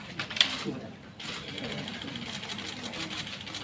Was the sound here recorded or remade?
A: recorded